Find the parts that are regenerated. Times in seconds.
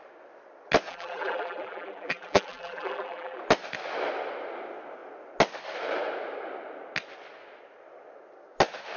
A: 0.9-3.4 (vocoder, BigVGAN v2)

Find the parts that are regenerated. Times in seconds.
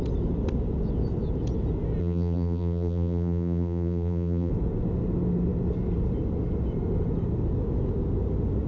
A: 2.0-4.5 (vocoder, BigVGAN v2)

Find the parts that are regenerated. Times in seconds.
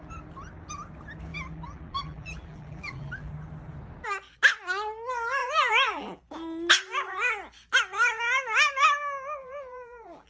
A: 1.3-3.3 (vocoder, BigVGAN v2); 5.4-6.2; 9.4-10.3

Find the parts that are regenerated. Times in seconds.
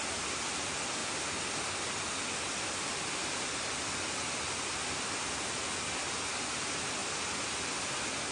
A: none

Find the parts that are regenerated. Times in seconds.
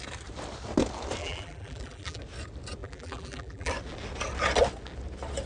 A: 1.2-2.2 (vocoder, BigVGAN v2); 2.8-3.7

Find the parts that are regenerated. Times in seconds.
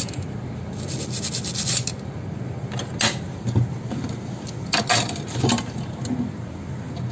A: 4.9-5.8 (vocoder, BigVGAN v2)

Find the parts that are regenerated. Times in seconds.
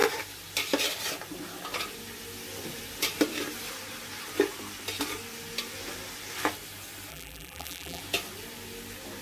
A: 7.1-8.0 (vocoder, BigVGAN v2)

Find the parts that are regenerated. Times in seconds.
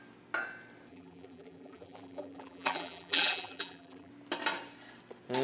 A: 0.9-4.1 (vocoder, BigVGAN v2)